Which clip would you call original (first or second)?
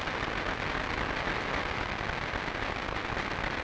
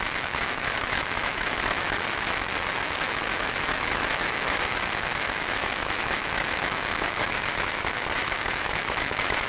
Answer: first